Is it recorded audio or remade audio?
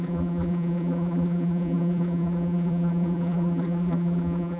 remade